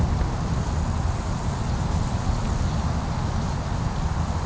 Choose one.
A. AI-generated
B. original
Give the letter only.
B